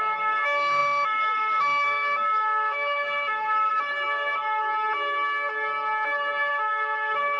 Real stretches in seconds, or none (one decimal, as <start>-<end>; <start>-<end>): 4.7-6.5